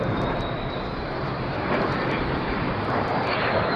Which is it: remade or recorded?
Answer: remade